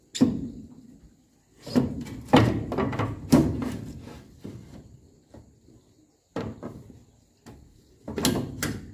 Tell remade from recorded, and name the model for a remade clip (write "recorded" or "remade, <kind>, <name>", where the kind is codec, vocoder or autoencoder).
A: recorded